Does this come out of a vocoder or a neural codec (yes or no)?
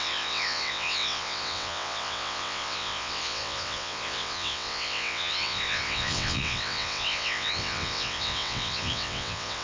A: yes